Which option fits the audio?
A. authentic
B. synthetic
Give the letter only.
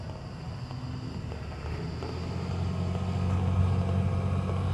A